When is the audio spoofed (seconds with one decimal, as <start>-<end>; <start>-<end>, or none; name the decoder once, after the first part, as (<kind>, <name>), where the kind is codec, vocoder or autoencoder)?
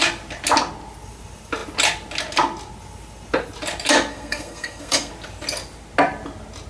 4.1-5.1 (codec, SNAC)